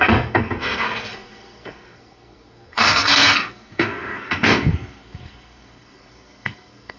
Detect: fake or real fake